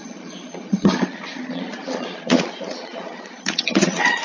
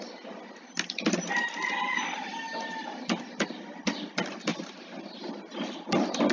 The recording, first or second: second